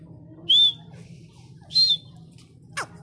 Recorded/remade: recorded